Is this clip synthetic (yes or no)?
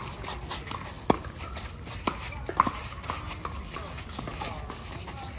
no